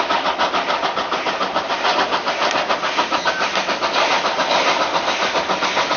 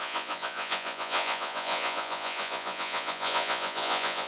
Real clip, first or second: first